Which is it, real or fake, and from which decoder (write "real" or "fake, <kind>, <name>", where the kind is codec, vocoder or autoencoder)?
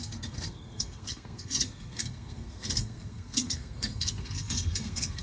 fake, codec, SNAC